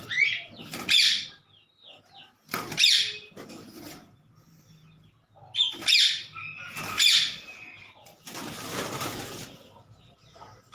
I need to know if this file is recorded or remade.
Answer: recorded